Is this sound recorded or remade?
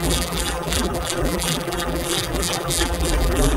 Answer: remade